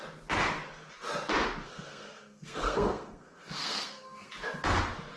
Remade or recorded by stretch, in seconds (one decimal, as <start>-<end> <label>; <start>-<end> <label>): 0.0-1.6 recorded; 1.6-4.3 remade; 4.3-5.2 recorded